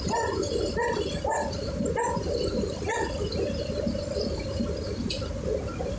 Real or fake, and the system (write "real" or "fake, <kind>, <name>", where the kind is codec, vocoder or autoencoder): fake, vocoder, BigVGAN v2